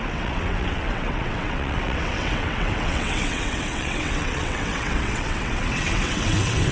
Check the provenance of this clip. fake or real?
fake